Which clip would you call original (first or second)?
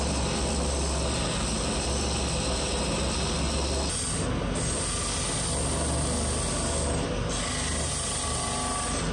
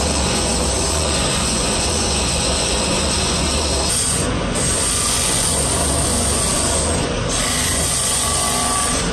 first